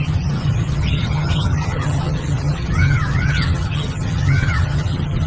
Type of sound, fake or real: fake